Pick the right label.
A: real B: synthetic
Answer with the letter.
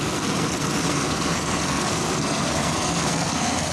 B